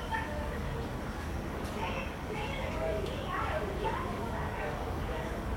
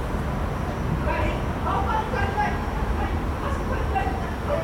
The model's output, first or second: first